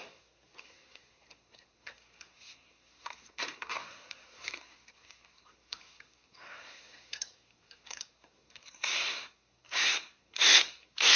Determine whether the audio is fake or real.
fake